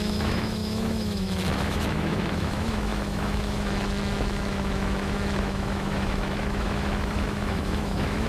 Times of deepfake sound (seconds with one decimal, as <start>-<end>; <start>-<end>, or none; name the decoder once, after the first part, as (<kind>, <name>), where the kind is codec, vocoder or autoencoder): 0.0-8.3 (autoencoder, DAC-VAE)